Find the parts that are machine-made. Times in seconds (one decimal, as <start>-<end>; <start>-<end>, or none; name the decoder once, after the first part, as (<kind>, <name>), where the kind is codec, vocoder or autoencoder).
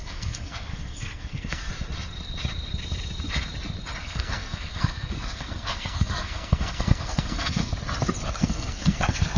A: 0.0-1.7 (codec, SNAC); 4.0-7.7; 8.3-9.4